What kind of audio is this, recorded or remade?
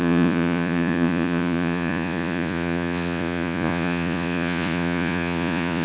remade